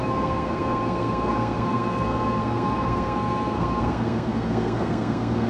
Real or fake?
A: fake